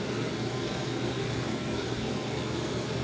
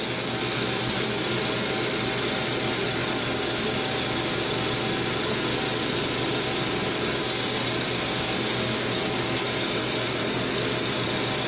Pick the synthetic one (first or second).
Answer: first